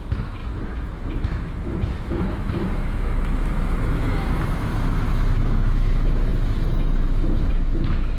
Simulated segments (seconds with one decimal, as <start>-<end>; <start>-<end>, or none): 0.0-8.2